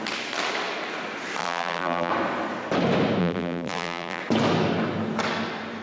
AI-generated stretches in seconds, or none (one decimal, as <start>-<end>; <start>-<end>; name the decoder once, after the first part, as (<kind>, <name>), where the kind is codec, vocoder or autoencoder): 1.4-2.1 (vocoder, BigVGAN v2); 3.2-4.2